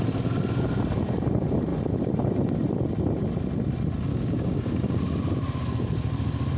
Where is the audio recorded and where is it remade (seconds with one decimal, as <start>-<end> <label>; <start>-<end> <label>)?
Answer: 0.0-4.1 recorded; 4.1-5.0 remade; 5.0-6.6 recorded